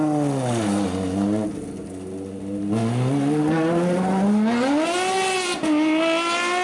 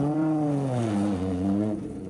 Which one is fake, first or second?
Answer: second